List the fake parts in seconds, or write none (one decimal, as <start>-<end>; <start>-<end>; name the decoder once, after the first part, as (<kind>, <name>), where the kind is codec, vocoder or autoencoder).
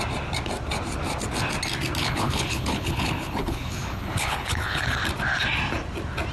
2.0-5.0 (codec, HILCodec)